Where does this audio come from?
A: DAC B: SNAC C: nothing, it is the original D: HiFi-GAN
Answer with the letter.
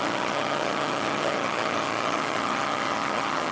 D